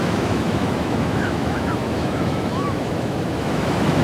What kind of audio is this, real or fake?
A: fake